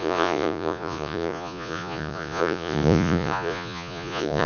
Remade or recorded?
remade